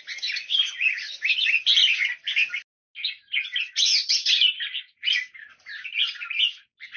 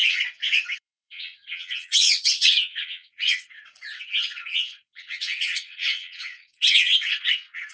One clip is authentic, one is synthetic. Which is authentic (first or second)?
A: first